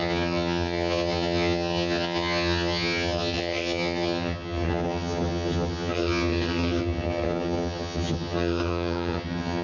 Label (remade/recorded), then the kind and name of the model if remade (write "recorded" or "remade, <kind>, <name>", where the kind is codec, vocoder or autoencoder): remade, vocoder, HiFi-GAN